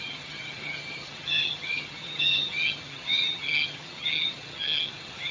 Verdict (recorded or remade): remade